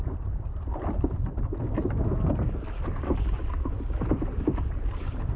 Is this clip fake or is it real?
real